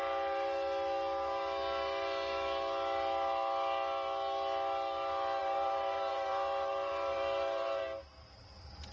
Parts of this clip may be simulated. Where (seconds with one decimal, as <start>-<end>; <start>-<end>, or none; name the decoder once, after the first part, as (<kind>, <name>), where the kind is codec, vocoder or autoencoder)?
5.4-7.8 (vocoder, BigVGAN v2)